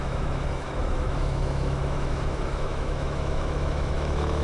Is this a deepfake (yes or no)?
yes